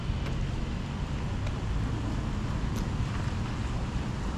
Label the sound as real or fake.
real